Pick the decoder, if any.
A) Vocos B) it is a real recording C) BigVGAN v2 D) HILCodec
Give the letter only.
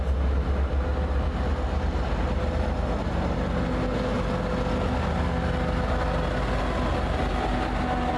B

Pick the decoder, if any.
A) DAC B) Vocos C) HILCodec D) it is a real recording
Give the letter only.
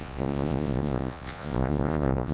B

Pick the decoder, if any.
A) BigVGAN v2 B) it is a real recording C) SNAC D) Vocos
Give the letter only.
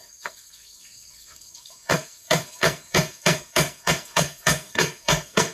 C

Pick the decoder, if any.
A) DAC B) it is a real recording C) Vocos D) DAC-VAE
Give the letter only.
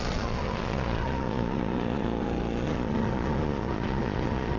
C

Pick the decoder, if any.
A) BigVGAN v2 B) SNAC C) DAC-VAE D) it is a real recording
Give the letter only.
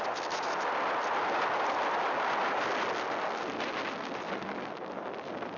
D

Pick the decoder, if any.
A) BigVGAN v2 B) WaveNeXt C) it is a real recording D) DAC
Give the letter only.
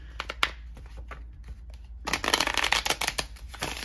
C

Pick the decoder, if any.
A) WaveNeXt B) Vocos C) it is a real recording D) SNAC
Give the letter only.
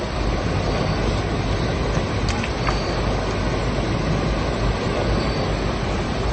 C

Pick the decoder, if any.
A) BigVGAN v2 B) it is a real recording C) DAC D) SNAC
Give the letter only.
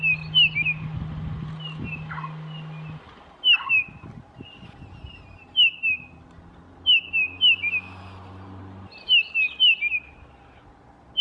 B